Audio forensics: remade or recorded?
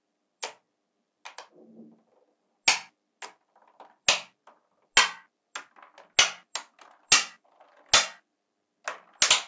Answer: recorded